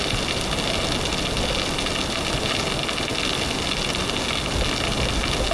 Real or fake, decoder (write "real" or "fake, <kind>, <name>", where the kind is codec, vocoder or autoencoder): real